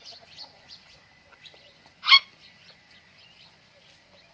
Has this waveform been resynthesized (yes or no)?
yes